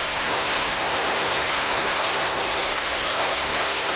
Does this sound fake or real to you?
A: fake